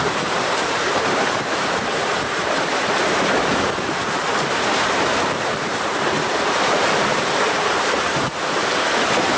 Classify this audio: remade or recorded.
remade